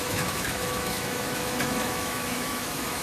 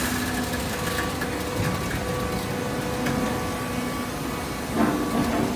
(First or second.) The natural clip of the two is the second